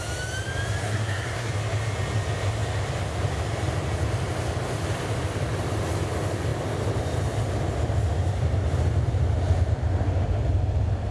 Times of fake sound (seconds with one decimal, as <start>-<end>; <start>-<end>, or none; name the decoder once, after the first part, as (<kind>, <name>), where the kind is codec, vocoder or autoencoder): 0.8-1.5 (codec, SNAC)